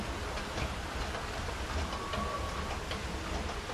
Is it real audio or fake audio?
real